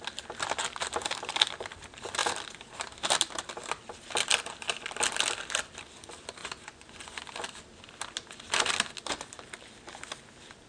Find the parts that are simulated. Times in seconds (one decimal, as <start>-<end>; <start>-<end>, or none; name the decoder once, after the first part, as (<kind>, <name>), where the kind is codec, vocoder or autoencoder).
6.4-7.2 (vocoder, Vocos)

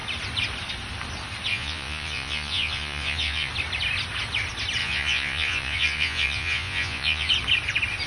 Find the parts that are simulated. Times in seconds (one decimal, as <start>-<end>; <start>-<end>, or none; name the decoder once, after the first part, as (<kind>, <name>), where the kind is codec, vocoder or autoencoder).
1.5-3.5 (vocoder, Vocos); 4.8-7.3

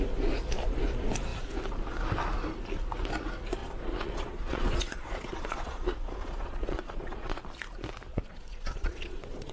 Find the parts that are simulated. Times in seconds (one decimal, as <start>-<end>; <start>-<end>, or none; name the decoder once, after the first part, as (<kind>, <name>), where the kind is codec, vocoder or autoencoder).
3.6-7.4 (vocoder, Vocos); 8.1-9.5

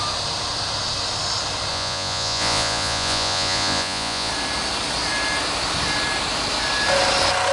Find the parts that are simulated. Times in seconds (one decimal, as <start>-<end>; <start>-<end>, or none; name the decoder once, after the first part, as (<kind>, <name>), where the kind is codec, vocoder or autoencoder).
1.7-4.3 (vocoder, Vocos)

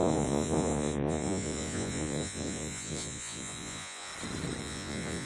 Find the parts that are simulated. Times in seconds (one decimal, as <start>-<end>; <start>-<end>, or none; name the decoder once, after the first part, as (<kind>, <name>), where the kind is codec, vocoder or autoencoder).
0.0-4.1 (vocoder, Vocos); 4.6-5.3